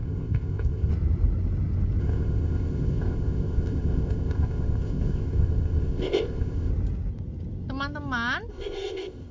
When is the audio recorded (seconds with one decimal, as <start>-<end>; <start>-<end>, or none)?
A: 0.9-2.0; 6.7-8.5